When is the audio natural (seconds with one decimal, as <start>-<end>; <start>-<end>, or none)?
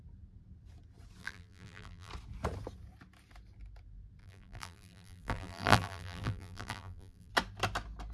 0.0-1.2; 2.1-4.2; 7.3-8.1